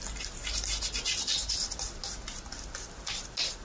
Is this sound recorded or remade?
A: recorded